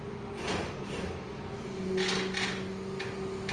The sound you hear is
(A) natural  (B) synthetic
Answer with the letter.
A